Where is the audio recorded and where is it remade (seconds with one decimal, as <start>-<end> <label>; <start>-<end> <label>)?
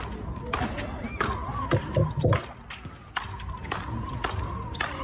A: 0.0-5.0 recorded